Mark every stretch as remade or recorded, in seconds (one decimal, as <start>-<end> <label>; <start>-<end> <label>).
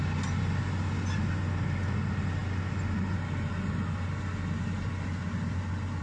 0.0-6.0 recorded